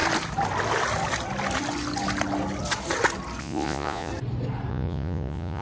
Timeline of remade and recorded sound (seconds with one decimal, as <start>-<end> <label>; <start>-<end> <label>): 0.0-3.4 recorded; 3.4-4.1 remade; 4.1-4.7 recorded; 4.7-5.6 remade